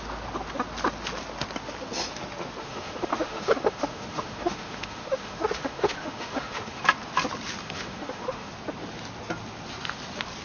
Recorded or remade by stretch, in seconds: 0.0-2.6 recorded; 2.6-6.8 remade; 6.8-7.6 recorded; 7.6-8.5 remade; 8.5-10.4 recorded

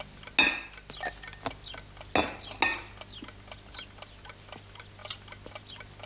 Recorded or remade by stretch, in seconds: 0.0-6.1 recorded

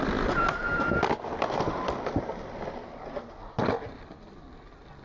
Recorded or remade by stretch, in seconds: 0.0-5.0 recorded

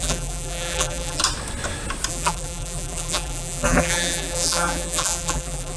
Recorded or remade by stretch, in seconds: 0.0-1.2 remade; 1.2-2.1 recorded; 2.1-5.8 remade

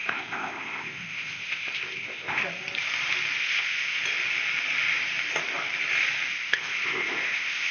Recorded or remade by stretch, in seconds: 0.0-2.4 remade; 2.4-3.4 recorded; 3.4-4.0 remade; 4.0-6.3 recorded; 6.3-7.7 remade

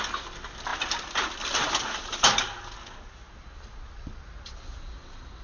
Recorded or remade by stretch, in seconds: 0.0-5.4 recorded

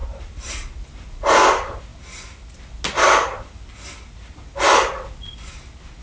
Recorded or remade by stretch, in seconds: 0.0-0.5 remade; 0.5-6.0 recorded